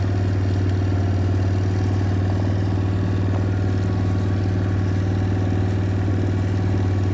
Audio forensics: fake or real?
real